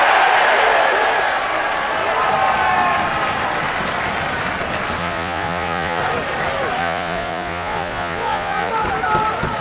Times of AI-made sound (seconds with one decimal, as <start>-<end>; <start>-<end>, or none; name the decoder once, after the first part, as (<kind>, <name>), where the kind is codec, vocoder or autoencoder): 5.0-6.0 (vocoder, Vocos); 6.8-8.7